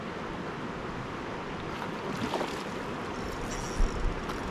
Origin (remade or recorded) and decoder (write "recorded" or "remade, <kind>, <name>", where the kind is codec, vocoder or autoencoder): recorded